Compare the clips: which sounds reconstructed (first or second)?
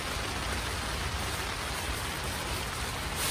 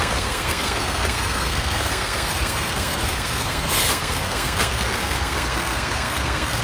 second